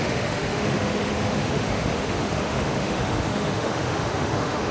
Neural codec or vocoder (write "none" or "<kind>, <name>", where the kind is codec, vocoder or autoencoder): autoencoder, DAC-VAE